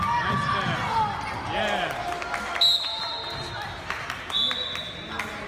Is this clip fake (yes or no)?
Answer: no